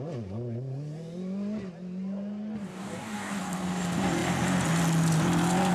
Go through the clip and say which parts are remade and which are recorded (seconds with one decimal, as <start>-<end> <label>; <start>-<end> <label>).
0.0-2.7 recorded; 2.7-3.4 remade; 3.4-5.7 recorded